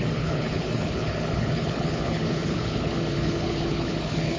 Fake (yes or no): yes